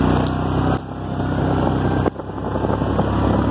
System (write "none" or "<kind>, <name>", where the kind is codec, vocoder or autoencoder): none